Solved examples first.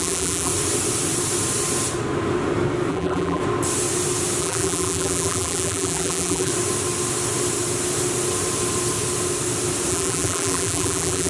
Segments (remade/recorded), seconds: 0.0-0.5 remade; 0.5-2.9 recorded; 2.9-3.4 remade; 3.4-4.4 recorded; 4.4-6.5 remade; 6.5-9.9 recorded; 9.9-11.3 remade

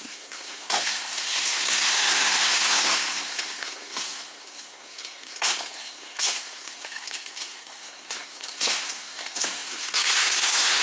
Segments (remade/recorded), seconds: 0.0-10.8 remade

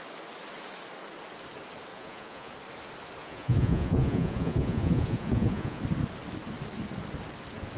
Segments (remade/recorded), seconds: 0.0-1.9 recorded; 1.9-2.5 remade; 2.5-3.2 recorded; 3.2-5.8 remade; 5.8-7.8 recorded

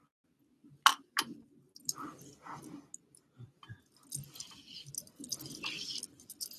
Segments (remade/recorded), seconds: 0.0-6.6 recorded

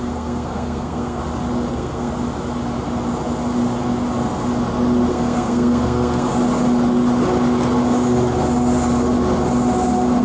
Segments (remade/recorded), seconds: 0.0-1.2 remade; 1.2-1.7 recorded; 1.7-2.1 remade; 2.1-5.1 recorded; 5.1-6.3 remade; 6.3-10.2 recorded

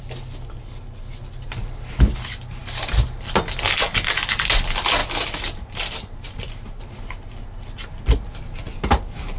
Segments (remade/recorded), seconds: 0.0-9.4 recorded

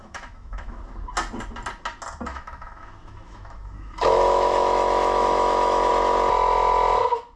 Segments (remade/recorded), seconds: 0.0-0.8 remade; 0.8-2.3 recorded; 2.3-5.9 remade; 5.9-7.4 recorded

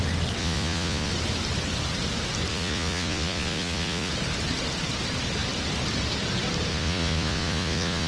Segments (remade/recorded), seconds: 0.0-0.4 recorded; 0.4-1.1 remade; 1.1-2.5 recorded; 2.5-4.1 remade; 4.1-6.7 recorded; 6.7-8.1 remade